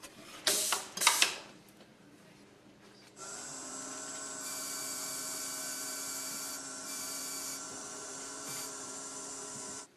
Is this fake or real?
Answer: fake